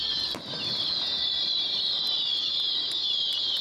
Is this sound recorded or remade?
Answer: remade